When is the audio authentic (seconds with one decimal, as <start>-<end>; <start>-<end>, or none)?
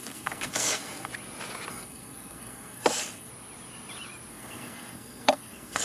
1.1-1.7; 3.3-4.3